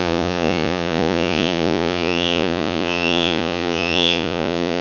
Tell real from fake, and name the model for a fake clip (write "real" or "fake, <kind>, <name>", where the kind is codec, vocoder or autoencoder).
fake, vocoder, Vocos